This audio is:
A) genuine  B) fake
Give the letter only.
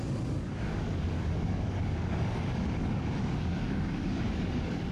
B